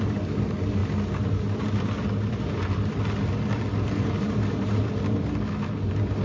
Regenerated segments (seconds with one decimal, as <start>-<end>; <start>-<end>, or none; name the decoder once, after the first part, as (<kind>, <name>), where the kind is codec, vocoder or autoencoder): none